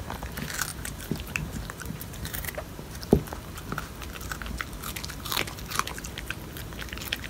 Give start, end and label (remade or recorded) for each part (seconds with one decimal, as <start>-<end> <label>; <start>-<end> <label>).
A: 0.0-0.7 recorded; 0.7-2.9 remade; 2.9-7.3 recorded